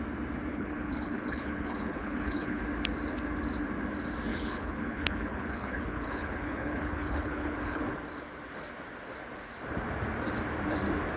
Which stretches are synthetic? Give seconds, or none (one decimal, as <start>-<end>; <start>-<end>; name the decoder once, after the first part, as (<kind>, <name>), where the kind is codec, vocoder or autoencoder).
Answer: 0.5-2.6 (codec, HILCodec); 4.3-7.8